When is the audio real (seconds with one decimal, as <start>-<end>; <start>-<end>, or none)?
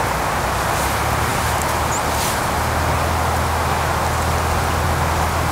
0.0-5.5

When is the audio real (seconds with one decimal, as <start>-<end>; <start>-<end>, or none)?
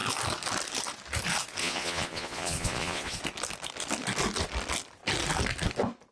0.0-1.6; 3.2-6.1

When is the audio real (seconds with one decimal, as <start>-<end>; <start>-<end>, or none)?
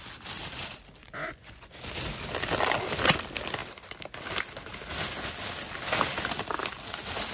0.0-1.0; 1.7-7.3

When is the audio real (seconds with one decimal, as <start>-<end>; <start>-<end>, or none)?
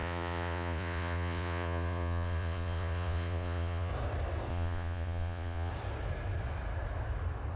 3.9-4.5; 5.7-7.6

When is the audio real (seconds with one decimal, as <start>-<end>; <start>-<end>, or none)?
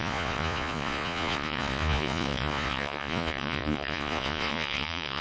none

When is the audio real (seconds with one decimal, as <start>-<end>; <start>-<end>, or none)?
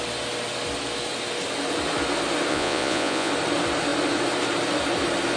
0.0-2.5; 3.3-5.4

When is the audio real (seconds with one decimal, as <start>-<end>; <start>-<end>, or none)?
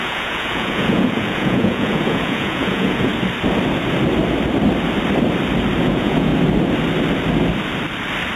3.1-5.8; 6.3-8.4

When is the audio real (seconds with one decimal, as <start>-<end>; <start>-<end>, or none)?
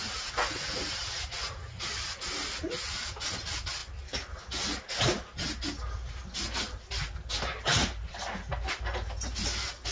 0.0-9.9